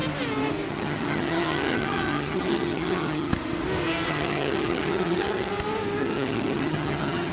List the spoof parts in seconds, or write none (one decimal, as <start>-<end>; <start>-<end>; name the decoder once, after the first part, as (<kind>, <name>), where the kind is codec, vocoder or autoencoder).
0.7-3.3 (vocoder, HiFi-GAN); 4.1-5.5; 6.0-7.3